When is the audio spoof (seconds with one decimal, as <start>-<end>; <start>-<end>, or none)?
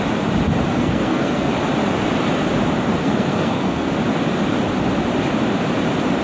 0.7-1.5; 2.9-3.9